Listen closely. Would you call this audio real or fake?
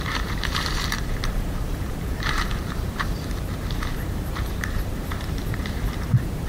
fake